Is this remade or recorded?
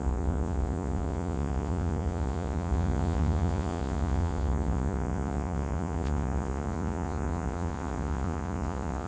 remade